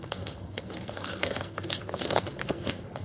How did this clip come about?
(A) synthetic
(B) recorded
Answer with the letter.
A